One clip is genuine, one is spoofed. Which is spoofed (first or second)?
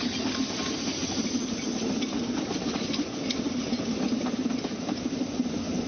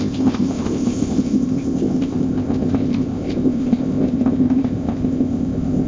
second